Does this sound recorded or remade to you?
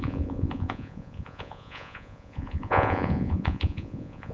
remade